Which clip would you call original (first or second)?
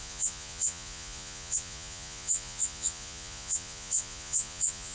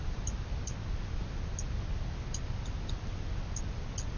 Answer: second